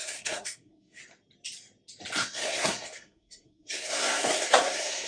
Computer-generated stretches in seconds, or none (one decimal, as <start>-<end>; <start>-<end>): 0.0-1.0; 2.2-5.1